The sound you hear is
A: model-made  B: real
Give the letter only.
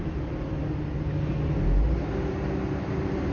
B